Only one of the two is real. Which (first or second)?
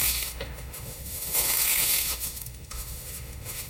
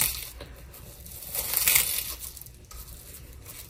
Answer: second